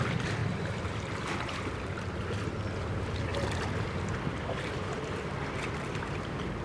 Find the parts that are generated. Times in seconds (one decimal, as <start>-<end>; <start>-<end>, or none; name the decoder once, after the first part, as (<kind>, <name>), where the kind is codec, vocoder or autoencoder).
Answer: 0.0-6.6 (vocoder, BigVGAN v2)